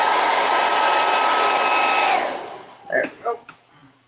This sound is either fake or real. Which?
real